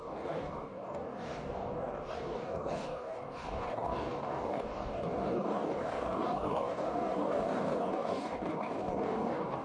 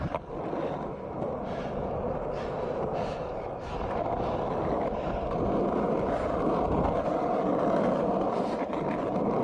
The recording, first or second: second